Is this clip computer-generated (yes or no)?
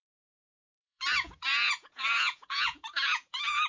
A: yes